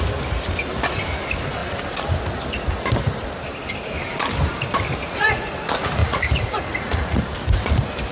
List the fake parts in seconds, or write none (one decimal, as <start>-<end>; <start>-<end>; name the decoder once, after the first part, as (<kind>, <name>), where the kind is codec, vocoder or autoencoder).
5.0-5.5 (vocoder, Vocos); 6.0-7.2